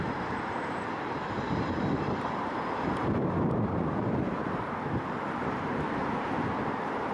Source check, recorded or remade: remade